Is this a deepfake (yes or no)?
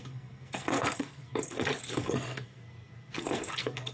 yes